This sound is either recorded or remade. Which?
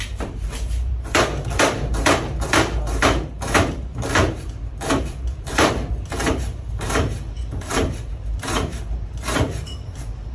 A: remade